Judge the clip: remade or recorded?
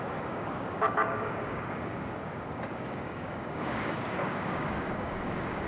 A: remade